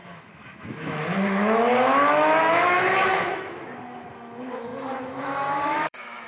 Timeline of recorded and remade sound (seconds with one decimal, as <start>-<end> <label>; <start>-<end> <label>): 0.0-6.3 remade